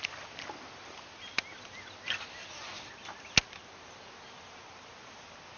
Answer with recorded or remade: recorded